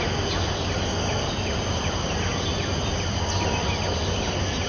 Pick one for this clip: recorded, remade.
recorded